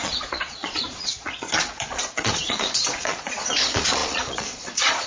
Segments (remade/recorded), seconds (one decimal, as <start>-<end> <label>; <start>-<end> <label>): 0.0-5.1 remade